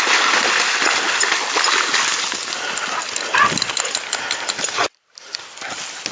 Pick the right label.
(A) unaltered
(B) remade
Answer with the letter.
A